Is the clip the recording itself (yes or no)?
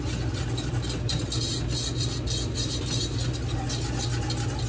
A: yes